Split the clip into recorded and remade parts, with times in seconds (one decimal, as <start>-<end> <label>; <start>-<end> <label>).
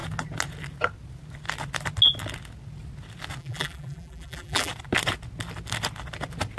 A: 0.0-3.4 recorded; 3.4-4.7 remade; 4.7-6.6 recorded